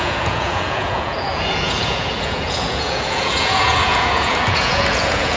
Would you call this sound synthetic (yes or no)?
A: yes